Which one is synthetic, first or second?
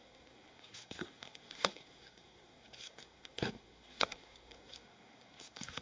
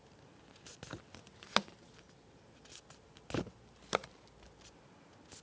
first